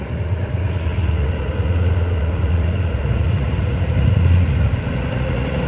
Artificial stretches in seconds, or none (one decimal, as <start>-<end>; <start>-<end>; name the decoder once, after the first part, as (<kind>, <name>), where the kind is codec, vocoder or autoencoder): 0.0-5.7 (vocoder, Vocos)